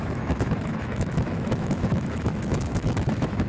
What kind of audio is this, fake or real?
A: fake